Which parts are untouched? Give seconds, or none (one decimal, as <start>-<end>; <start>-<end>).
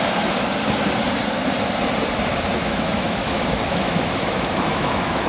0.0-2.6